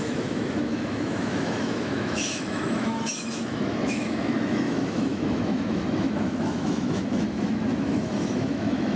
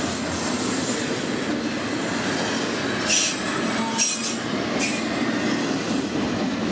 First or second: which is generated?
first